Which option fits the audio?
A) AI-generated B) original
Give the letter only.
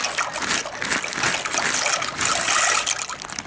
B